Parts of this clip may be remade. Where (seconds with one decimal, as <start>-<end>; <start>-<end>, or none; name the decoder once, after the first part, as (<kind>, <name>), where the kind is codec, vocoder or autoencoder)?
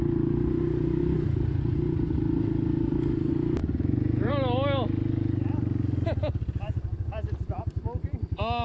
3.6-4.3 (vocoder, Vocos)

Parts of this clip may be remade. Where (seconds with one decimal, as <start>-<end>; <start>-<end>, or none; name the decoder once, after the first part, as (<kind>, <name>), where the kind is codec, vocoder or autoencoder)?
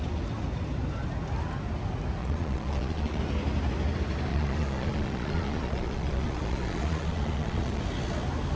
2.2-3.2 (vocoder, Vocos); 4.3-7.8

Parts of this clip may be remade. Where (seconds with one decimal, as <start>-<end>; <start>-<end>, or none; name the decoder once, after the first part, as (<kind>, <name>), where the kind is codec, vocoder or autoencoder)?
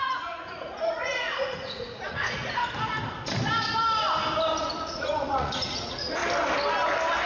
0.0-2.6 (vocoder, Vocos); 4.6-6.2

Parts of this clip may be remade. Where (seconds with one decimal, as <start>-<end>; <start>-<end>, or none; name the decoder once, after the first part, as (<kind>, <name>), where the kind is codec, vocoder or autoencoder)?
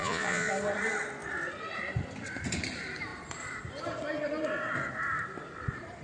0.0-0.5 (vocoder, Vocos)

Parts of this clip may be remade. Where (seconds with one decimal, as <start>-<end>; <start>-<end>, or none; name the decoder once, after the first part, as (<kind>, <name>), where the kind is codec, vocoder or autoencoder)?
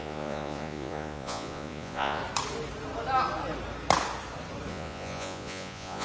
0.0-2.2 (vocoder, Vocos); 4.7-6.0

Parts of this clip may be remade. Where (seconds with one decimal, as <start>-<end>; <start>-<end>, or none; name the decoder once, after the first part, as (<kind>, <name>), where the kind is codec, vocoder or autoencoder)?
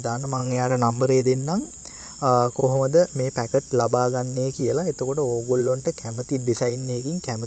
0.0-2.6 (vocoder, Vocos); 3.6-4.6; 5.6-7.5